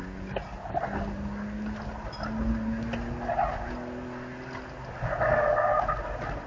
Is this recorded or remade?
recorded